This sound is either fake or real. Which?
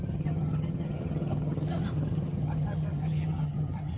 fake